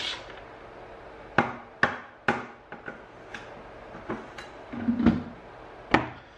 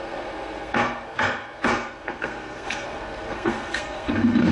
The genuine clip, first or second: first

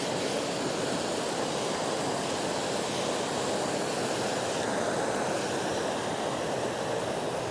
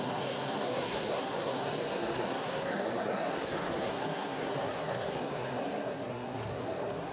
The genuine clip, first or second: first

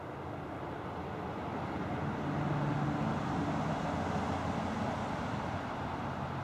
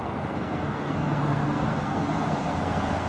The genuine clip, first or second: first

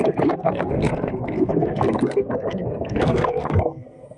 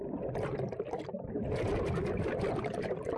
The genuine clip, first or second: second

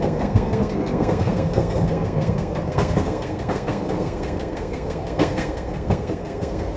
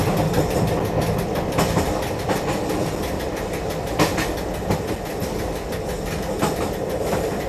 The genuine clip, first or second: second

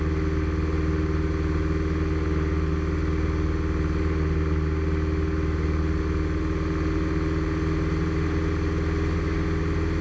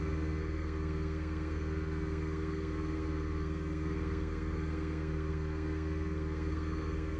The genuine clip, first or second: first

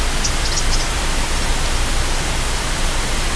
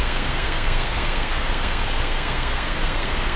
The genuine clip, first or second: first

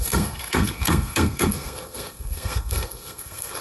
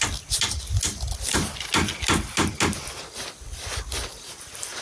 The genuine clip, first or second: second